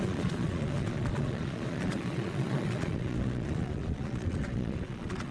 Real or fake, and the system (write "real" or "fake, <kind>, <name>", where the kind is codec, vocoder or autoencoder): fake, vocoder, Vocos